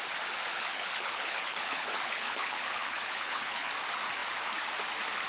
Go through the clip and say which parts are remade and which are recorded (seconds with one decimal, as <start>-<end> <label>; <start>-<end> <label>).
0.0-0.5 recorded; 0.5-3.7 remade; 3.7-5.3 recorded